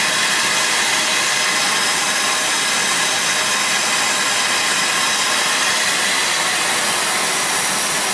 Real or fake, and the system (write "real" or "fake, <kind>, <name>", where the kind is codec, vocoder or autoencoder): real